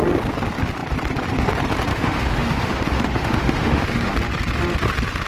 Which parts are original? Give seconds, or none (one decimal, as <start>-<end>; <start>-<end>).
0.0-1.9; 4.1-5.3